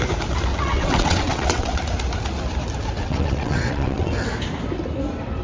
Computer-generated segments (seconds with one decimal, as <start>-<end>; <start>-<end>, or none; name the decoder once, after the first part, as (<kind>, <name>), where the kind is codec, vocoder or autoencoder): 0.5-1.8 (vocoder, WaveNeXt); 3.0-4.1